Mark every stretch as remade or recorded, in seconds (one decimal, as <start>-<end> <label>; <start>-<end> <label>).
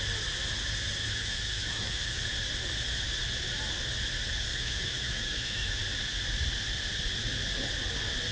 0.0-1.0 recorded; 1.0-2.2 remade; 2.2-4.5 recorded; 4.5-5.8 remade; 5.8-8.3 recorded